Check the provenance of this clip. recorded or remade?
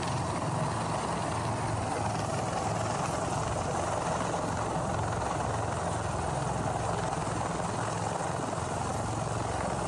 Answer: recorded